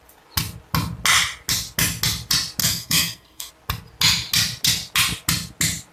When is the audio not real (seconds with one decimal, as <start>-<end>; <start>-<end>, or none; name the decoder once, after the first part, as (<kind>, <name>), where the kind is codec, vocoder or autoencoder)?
2.6-3.5 (codec, SNAC)